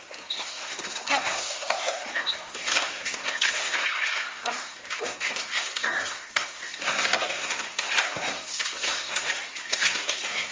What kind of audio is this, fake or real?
fake